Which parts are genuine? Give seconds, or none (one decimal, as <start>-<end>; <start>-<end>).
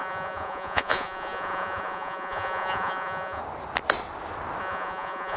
3.4-4.6